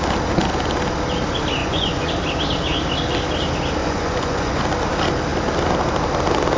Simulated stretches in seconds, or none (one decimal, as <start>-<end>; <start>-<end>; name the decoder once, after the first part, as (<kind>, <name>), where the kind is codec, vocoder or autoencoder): 1.6-2.1 (vocoder, Vocos); 3.8-4.6